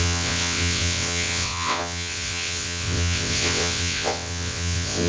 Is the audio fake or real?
fake